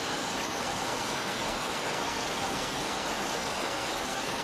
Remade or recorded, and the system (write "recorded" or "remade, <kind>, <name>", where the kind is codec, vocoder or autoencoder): remade, codec, SNAC